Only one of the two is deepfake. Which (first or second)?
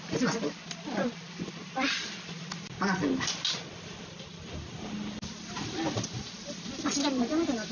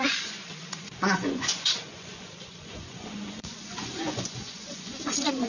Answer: second